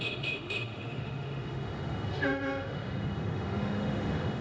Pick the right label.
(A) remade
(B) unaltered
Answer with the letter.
A